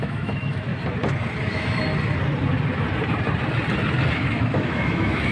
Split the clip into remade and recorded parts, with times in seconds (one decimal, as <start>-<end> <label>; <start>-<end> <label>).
0.0-0.7 remade; 0.7-1.4 recorded; 1.4-1.9 remade; 1.9-4.1 recorded; 4.1-5.3 remade